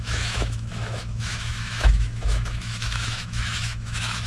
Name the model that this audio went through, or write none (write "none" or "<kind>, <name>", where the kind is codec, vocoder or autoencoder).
autoencoder, DAC-VAE